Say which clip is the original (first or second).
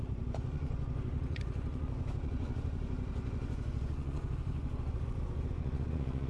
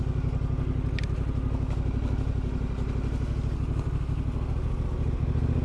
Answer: second